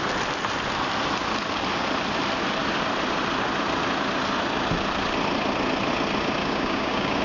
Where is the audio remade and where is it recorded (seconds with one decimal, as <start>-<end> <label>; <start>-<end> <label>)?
0.0-6.4 recorded; 6.4-7.2 remade